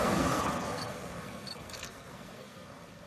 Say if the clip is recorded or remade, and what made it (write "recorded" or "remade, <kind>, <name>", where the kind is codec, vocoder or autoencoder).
remade, codec, SNAC